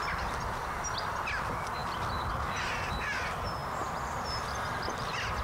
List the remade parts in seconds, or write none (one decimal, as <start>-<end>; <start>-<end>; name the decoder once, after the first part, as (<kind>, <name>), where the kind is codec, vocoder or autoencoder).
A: none